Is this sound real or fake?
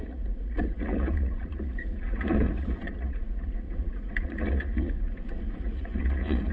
fake